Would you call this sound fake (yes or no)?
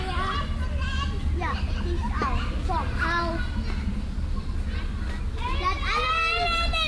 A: no